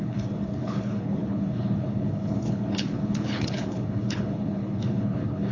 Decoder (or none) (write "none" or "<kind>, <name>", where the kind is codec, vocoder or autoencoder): codec, HILCodec